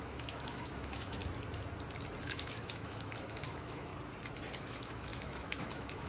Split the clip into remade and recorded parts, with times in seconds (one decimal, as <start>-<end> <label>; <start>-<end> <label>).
0.0-1.2 remade; 1.2-2.2 recorded; 2.2-3.9 remade; 3.9-4.6 recorded; 4.6-6.1 remade